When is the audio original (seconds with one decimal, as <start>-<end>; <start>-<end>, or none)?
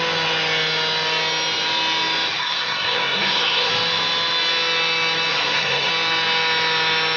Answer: 0.0-2.4; 3.7-5.3; 5.9-7.2